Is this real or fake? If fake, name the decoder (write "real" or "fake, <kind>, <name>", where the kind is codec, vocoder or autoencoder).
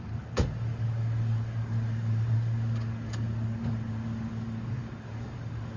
fake, codec, DAC